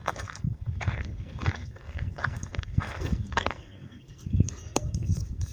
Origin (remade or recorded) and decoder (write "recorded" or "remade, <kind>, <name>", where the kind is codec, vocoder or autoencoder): remade, codec, SNAC